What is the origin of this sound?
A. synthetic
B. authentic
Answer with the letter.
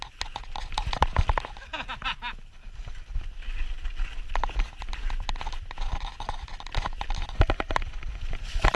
B